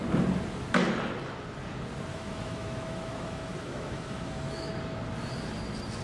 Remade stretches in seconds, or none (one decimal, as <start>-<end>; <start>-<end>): 2.1-4.7